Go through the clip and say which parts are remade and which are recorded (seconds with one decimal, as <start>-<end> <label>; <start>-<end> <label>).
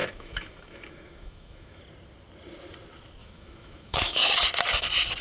0.0-1.8 remade; 1.8-3.2 recorded; 3.2-4.3 remade; 4.3-5.2 recorded